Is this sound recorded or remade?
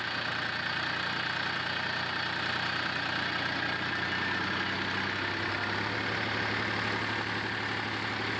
recorded